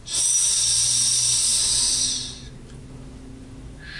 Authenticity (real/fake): real